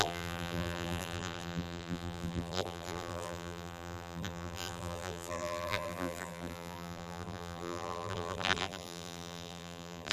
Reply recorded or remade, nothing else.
remade